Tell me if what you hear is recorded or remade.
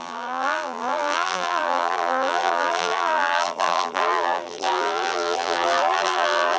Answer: remade